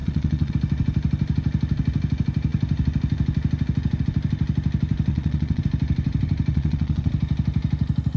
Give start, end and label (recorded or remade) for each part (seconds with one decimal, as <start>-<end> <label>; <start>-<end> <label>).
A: 0.0-0.5 remade; 0.5-5.1 recorded; 5.1-5.6 remade; 5.6-6.5 recorded; 6.5-7.1 remade; 7.1-8.2 recorded